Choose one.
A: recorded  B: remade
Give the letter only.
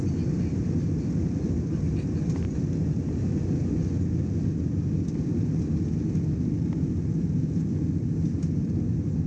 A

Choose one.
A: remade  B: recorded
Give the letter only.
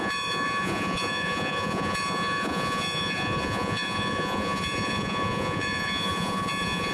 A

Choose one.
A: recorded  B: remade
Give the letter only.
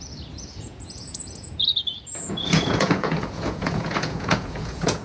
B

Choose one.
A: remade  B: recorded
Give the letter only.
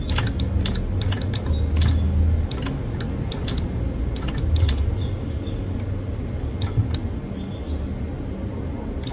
B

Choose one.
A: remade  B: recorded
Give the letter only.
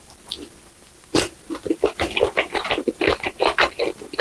B